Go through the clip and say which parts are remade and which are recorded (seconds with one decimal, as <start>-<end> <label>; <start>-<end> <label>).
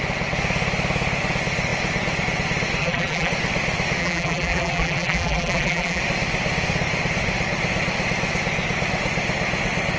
0.0-2.8 recorded; 2.8-3.3 remade; 3.3-4.0 recorded; 4.0-6.0 remade; 6.0-10.0 recorded